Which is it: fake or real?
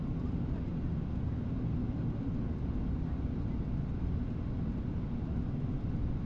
real